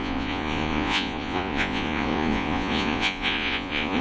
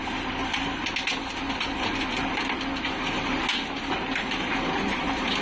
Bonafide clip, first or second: second